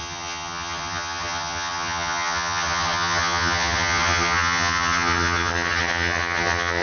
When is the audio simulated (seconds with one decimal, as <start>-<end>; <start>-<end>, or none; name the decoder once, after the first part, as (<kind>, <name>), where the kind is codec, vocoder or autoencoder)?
0.0-6.8 (vocoder, HiFi-GAN)